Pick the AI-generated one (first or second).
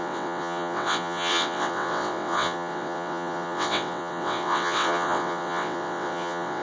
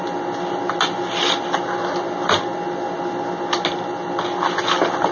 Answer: first